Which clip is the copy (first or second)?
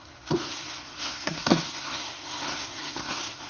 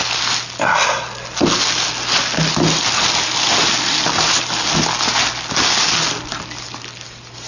first